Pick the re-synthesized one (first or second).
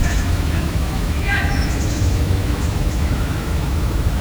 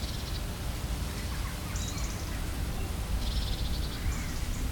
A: first